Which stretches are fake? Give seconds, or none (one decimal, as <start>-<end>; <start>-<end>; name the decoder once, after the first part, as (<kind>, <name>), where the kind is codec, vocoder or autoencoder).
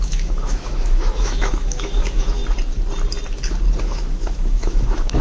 0.0-2.4 (autoencoder, DAC-VAE); 3.8-5.2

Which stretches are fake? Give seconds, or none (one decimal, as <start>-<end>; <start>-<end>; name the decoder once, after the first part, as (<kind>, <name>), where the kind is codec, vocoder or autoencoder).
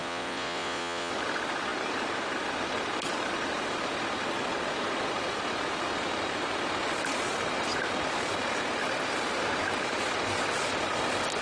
0.0-1.1 (vocoder, Vocos)